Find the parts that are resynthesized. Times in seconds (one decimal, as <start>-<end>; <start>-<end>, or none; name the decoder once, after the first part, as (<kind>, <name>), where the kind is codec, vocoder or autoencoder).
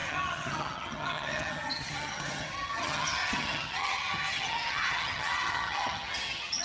0.0-6.6 (vocoder, HiFi-GAN)